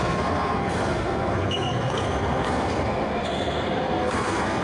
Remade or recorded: remade